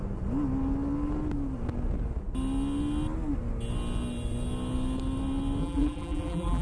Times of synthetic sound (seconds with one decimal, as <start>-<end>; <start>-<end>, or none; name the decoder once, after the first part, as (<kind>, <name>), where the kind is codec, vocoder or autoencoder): 5.6-6.6 (vocoder, BigVGAN v2)